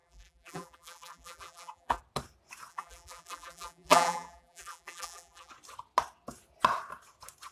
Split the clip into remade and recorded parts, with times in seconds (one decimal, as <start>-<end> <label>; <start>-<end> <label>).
0.0-2.0 remade; 2.0-2.7 recorded; 2.7-5.5 remade; 5.5-7.5 recorded